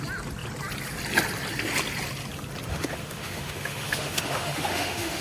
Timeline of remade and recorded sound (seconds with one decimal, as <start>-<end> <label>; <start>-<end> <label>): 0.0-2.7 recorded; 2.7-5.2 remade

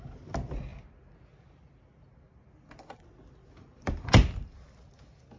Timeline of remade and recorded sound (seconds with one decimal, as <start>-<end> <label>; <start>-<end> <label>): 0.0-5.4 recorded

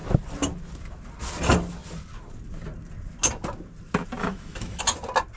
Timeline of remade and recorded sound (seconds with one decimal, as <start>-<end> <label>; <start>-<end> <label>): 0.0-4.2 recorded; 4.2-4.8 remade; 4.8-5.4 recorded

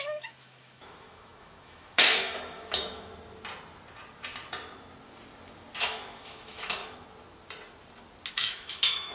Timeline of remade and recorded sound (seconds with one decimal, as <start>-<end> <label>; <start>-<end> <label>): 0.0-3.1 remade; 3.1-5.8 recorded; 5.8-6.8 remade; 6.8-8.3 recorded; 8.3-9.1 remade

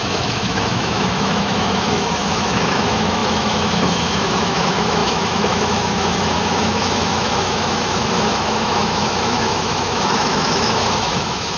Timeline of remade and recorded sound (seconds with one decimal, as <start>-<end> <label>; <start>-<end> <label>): 0.0-11.6 remade

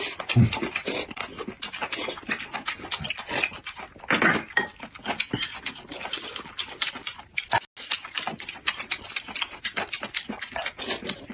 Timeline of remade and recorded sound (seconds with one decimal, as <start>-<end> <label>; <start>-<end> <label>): 0.0-11.3 recorded

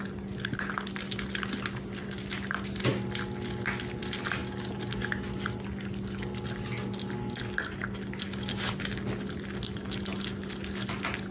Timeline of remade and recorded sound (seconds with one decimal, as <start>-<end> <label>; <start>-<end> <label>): 0.0-11.3 recorded